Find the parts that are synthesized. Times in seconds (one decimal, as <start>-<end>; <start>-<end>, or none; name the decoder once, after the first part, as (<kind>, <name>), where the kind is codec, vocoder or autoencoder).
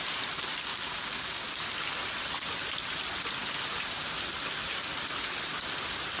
0.7-1.5 (codec, DAC)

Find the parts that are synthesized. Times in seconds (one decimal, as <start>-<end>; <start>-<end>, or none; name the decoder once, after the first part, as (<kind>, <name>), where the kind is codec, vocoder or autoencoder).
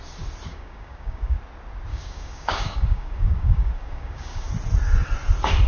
0.5-1.4 (codec, DAC); 1.9-4.5